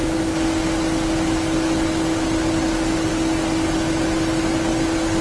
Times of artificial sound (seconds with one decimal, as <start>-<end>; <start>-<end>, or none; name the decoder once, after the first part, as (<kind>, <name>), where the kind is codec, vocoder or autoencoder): none